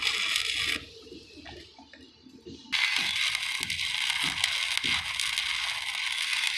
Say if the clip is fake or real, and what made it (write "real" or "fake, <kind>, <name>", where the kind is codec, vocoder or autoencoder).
real